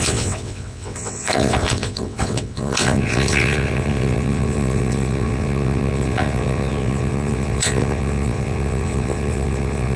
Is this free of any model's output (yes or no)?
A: no